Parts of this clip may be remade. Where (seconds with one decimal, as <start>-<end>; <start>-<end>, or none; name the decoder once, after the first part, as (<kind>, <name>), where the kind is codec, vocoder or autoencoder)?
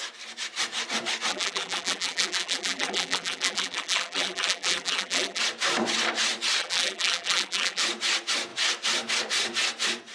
1.3-5.4 (vocoder, BigVGAN v2); 6.6-7.8